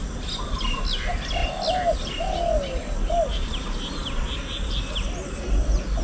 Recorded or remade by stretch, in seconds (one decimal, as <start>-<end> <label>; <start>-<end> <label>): 0.0-6.0 recorded